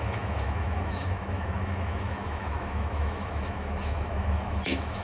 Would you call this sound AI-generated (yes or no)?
yes